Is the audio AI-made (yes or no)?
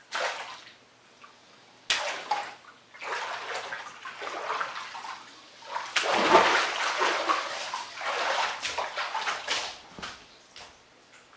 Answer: no